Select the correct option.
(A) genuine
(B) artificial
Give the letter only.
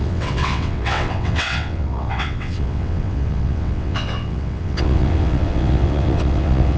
B